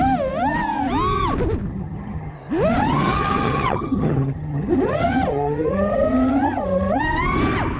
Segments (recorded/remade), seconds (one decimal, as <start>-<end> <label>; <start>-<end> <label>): 0.0-1.7 recorded; 1.7-2.3 remade; 2.3-2.8 recorded; 2.8-7.0 remade; 7.0-7.8 recorded